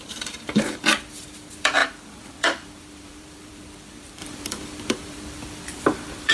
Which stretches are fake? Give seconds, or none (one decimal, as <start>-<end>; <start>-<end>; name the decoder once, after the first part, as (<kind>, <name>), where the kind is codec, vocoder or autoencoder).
0.0-6.3 (vocoder, BigVGAN v2)